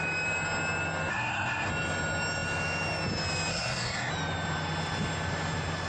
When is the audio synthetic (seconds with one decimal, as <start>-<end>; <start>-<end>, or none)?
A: 1.1-1.7; 3.5-4.1